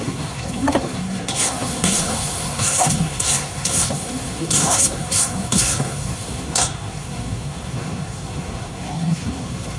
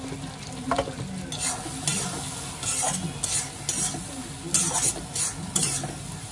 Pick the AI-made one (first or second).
first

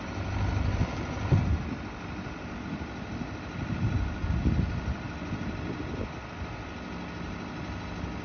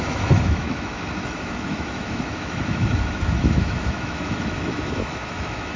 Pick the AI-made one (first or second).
second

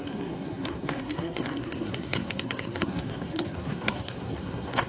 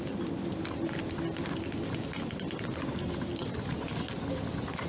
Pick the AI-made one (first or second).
first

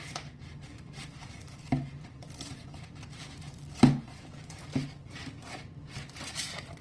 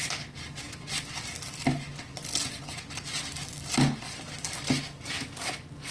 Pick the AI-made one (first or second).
first